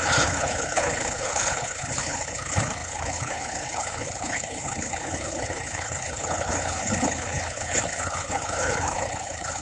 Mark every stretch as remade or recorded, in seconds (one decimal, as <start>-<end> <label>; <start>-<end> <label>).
0.0-9.6 remade